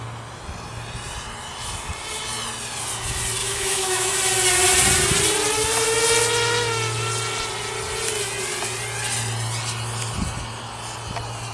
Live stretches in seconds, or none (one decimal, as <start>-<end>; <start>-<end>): 0.0-3.4; 4.1-11.5